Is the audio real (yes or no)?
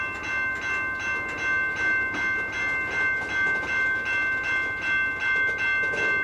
yes